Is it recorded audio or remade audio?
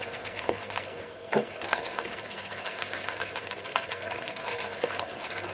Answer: remade